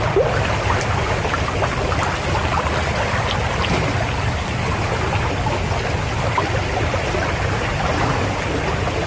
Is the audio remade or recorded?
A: recorded